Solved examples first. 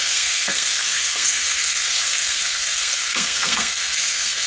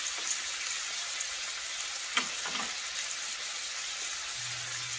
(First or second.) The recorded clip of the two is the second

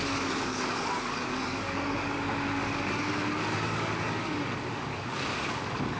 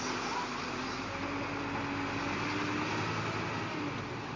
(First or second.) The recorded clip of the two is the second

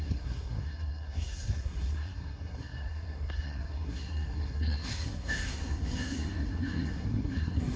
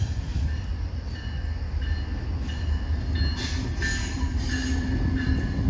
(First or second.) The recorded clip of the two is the second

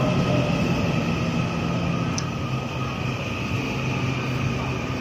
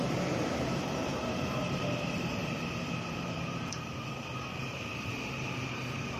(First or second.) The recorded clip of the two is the first